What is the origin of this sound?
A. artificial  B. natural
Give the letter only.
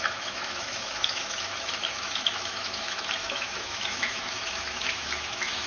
A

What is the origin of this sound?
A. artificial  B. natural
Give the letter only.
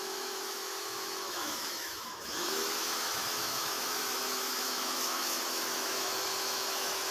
A